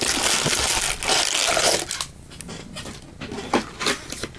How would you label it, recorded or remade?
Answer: recorded